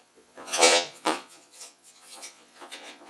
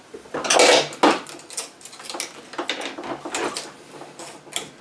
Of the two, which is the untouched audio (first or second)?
second